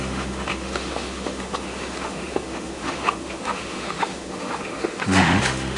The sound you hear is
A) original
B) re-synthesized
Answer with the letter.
B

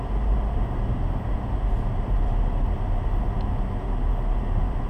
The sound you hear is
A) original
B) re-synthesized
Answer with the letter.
A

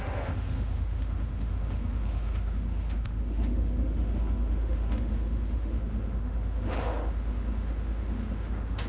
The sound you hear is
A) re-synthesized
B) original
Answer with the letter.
A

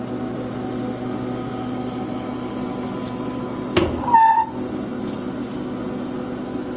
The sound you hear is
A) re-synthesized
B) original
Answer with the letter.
B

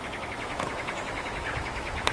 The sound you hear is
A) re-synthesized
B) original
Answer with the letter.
A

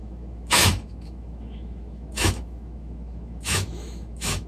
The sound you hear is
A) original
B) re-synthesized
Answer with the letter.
B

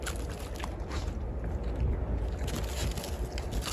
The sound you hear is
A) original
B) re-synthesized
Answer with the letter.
A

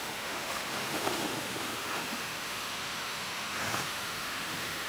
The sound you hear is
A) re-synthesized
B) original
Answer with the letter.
A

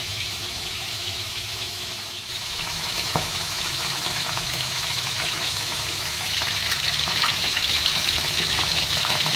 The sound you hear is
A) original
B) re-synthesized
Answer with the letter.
B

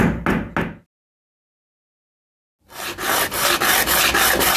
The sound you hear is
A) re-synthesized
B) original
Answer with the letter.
B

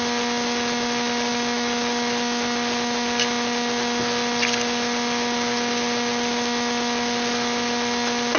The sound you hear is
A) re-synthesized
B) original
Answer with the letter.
B